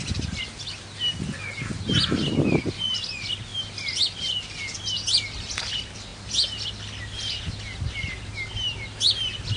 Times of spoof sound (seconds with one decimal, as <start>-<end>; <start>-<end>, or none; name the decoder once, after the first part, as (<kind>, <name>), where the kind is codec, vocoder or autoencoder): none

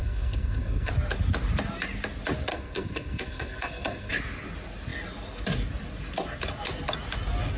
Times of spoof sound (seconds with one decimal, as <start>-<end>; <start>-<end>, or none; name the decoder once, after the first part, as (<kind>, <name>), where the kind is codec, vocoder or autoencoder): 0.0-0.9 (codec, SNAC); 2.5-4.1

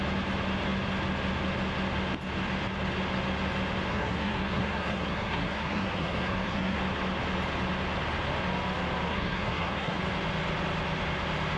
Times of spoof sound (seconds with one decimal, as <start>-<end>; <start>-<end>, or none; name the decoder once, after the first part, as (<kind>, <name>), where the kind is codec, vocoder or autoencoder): 3.9-6.8 (codec, SNAC); 9.1-10.0

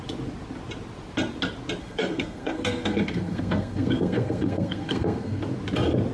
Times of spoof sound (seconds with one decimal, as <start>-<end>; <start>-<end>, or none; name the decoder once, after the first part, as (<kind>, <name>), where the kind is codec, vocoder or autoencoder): 1.8-5.4 (codec, SNAC)

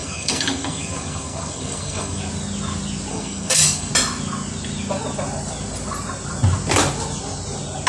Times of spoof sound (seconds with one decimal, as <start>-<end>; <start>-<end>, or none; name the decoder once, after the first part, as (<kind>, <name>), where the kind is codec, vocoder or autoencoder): 0.0-2.2 (codec, SNAC); 3.1-3.9

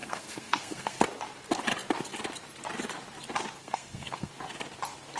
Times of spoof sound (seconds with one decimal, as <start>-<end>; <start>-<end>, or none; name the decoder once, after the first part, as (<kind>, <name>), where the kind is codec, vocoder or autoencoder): 0.0-1.0 (codec, SNAC); 3.6-4.3